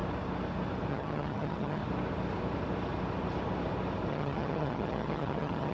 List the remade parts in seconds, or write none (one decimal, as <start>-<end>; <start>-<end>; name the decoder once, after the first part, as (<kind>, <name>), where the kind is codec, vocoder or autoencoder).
0.9-1.8 (vocoder, HiFi-GAN); 4.1-5.7